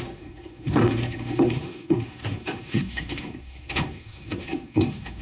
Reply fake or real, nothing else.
fake